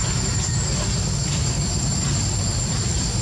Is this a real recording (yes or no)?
yes